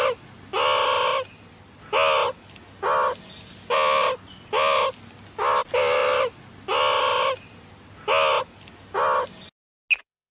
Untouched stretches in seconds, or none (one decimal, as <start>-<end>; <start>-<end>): 0.0-10.3